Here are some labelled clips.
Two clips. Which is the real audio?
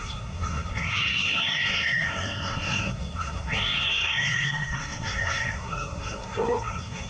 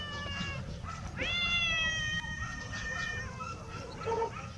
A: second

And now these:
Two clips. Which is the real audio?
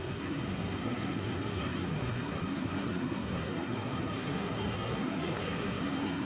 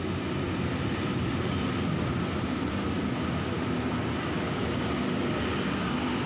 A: second